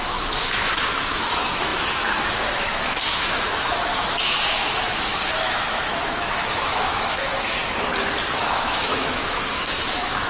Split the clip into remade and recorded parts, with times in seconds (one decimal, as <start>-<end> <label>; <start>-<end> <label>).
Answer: 0.0-7.6 remade; 7.6-8.3 recorded; 8.3-10.3 remade